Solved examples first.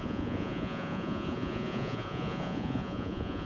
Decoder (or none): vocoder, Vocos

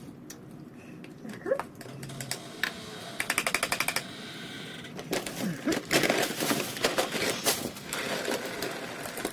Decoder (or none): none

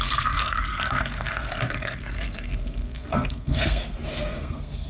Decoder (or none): codec, SNAC